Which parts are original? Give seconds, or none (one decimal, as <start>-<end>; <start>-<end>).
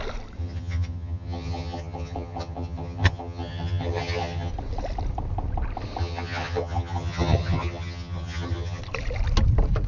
0.0-0.4; 4.5-6.0; 8.8-9.9